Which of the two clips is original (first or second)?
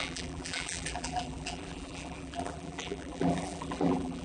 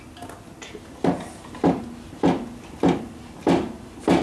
second